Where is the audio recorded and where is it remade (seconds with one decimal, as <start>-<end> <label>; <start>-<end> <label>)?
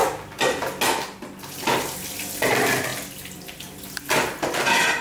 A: 0.0-5.0 recorded